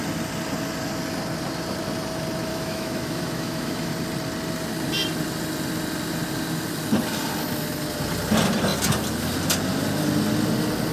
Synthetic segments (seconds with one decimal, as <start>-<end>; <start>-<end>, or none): 2.5-3.9

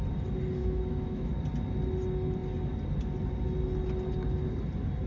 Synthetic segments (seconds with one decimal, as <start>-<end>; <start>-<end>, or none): 0.6-1.3

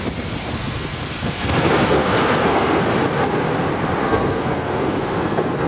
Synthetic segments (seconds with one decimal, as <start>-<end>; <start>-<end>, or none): 0.4-2.8; 4.0-5.7

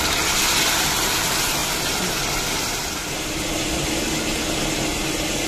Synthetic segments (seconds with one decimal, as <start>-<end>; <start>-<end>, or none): none

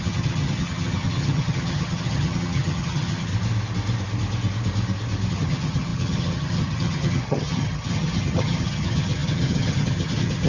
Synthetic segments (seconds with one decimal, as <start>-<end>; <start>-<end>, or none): 0.0-3.3; 5.3-10.5

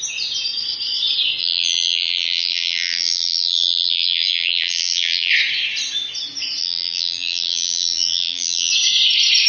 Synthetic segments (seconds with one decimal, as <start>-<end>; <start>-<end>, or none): 1.4-5.3; 6.6-8.7

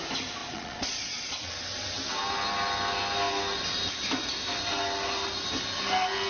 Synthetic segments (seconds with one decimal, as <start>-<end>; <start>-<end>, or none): 0.4-1.5